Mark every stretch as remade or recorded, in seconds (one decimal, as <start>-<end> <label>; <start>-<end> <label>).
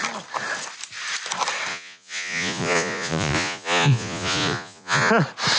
0.0-1.7 recorded; 1.7-5.1 remade; 5.1-5.6 recorded